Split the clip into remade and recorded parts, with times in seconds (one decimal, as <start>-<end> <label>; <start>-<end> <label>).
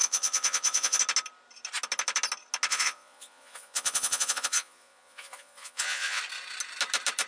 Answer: 0.0-1.0 remade; 1.0-2.7 recorded; 2.7-6.2 remade; 6.2-7.3 recorded